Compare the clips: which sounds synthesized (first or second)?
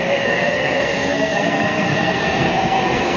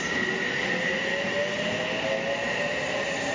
first